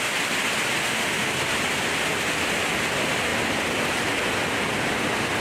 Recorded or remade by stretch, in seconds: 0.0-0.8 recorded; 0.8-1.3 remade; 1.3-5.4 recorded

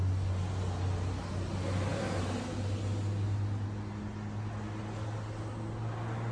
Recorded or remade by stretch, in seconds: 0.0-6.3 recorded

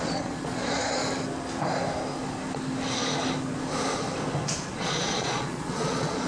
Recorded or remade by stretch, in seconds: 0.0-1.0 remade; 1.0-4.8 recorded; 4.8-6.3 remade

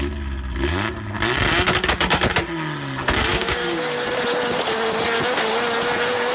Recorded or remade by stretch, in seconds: 0.0-3.3 recorded; 3.3-3.8 remade; 3.8-6.3 recorded

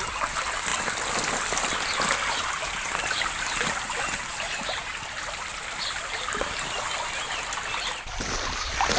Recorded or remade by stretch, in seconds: 0.0-9.0 recorded

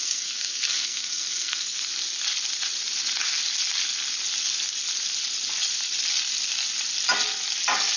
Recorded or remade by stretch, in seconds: 0.0-1.8 remade; 1.8-8.0 recorded

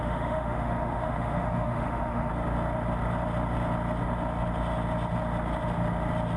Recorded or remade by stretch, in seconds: 0.0-2.3 remade; 2.3-6.4 recorded

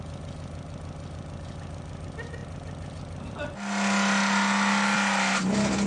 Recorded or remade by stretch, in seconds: 0.0-5.9 recorded